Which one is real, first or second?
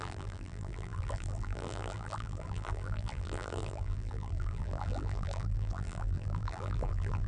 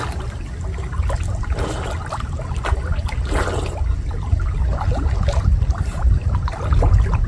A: second